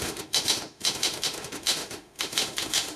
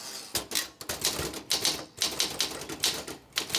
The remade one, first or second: first